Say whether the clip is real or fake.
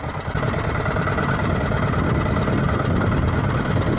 real